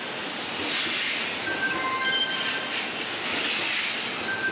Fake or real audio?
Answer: real